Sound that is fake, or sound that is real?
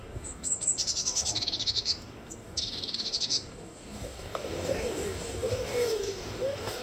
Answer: fake